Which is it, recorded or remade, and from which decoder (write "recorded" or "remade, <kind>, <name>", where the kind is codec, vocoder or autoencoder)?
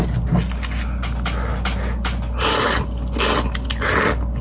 recorded